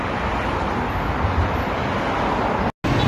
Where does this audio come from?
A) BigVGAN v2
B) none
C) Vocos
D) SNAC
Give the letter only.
B